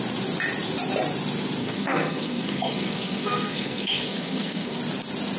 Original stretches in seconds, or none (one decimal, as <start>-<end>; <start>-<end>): 0.0-1.6; 4.8-5.4